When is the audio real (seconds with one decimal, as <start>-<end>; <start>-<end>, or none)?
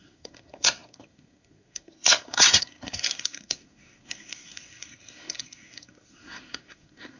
none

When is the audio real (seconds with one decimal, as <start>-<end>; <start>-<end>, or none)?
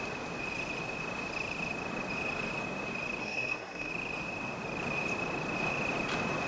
0.0-3.2; 3.9-6.5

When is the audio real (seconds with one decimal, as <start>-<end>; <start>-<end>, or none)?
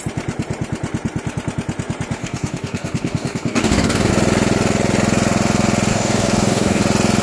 0.0-2.2; 4.1-5.9; 6.8-7.2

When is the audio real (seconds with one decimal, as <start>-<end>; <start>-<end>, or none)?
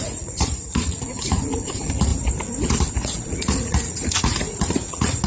2.1-2.9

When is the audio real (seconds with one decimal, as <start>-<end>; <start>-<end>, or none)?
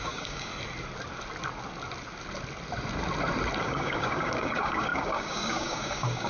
0.5-3.6